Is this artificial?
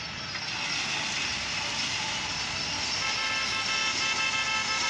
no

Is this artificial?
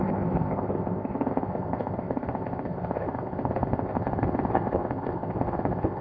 yes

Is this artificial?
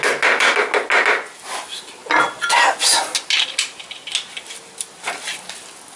no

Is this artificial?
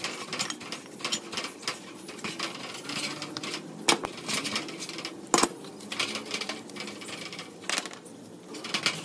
no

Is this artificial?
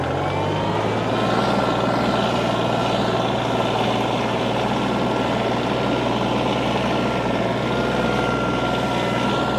no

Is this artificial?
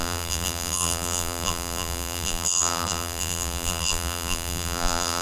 yes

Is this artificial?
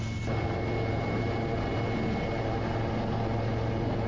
no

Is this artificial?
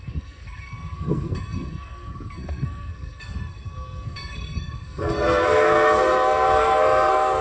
yes